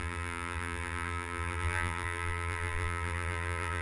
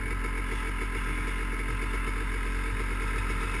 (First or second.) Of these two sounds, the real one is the second